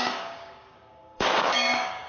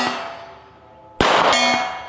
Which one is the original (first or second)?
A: second